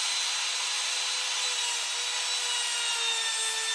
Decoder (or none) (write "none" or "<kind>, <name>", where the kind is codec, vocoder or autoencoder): none